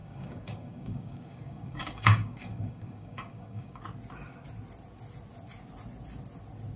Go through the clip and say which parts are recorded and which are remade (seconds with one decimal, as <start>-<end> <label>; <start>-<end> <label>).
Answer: 0.0-3.8 remade; 3.8-6.8 recorded